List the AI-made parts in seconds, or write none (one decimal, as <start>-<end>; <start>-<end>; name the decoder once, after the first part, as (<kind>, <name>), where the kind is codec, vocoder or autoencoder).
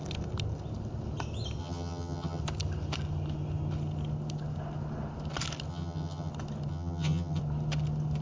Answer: 1.6-2.4 (vocoder, HiFi-GAN); 5.7-6.3; 6.7-7.4